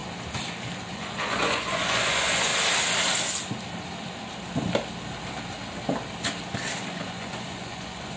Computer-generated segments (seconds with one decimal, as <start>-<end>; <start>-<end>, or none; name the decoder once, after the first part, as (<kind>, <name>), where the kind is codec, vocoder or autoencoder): 0.9-2.5 (vocoder, Vocos); 6.8-8.2